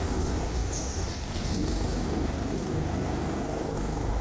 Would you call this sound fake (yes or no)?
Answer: yes